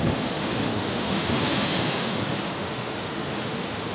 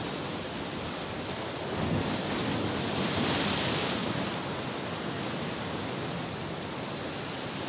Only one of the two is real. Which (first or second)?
second